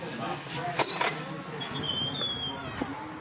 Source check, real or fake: real